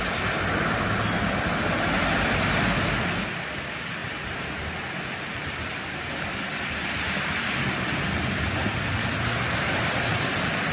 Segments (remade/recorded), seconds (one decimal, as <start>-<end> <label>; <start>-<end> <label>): 0.0-10.7 recorded